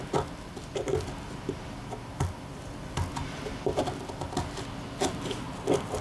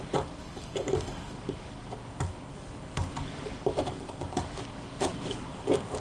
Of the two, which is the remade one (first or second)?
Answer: second